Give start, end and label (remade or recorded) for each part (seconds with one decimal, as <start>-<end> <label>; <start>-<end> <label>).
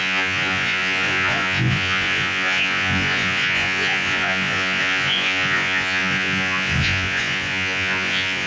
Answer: 0.0-8.5 remade